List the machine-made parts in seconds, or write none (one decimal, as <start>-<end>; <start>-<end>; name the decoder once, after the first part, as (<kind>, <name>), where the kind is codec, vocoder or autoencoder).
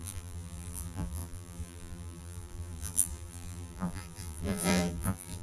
0.0-5.4 (vocoder, BigVGAN v2)